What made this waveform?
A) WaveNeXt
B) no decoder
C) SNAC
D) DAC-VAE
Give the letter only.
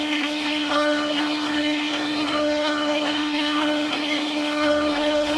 C